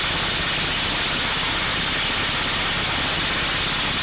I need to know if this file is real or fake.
real